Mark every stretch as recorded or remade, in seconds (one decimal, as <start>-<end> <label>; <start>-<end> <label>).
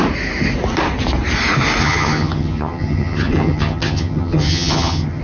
0.0-1.8 recorded; 1.8-5.2 remade